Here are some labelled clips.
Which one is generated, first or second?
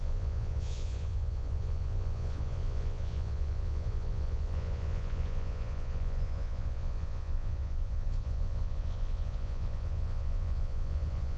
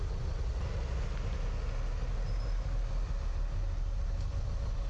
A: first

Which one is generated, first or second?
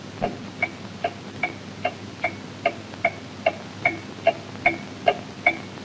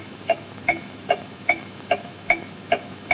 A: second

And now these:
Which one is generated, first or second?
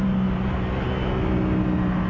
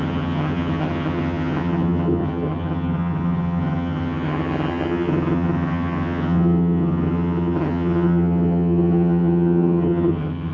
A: second